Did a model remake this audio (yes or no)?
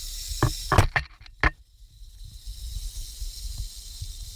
no